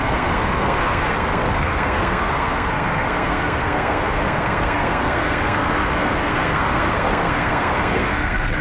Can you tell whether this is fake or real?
fake